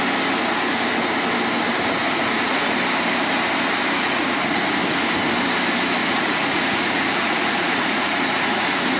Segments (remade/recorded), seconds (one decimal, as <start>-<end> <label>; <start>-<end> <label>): 0.0-2.0 recorded; 2.0-2.8 remade; 2.8-4.0 recorded; 4.0-4.6 remade; 4.6-6.0 recorded; 6.0-9.0 remade